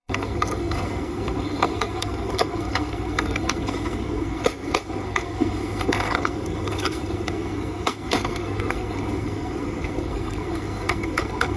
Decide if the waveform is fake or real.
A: fake